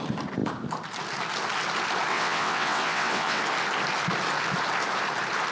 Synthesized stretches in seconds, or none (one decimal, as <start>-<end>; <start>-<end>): 2.1-3.4